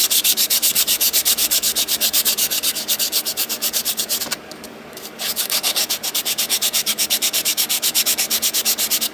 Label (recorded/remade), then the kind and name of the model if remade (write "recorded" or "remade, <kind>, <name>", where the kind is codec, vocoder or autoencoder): remade, codec, DAC